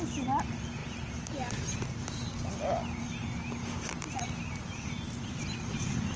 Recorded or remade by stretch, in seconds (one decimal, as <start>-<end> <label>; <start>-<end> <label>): 0.0-6.2 recorded